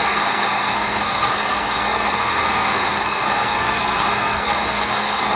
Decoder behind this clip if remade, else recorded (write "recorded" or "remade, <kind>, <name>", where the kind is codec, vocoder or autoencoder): remade, codec, SNAC